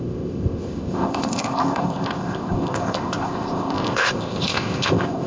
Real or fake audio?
fake